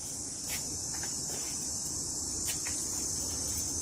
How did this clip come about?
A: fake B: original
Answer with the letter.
B